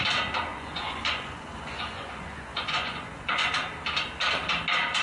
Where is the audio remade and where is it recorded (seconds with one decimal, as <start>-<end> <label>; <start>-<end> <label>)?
0.0-0.5 recorded; 0.5-3.5 remade; 3.5-5.0 recorded